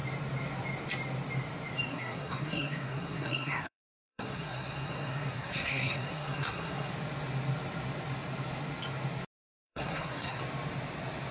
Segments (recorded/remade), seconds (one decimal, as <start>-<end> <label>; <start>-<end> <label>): 0.0-1.9 recorded; 1.9-6.9 remade; 6.9-9.4 recorded; 9.4-10.4 remade; 10.4-11.3 recorded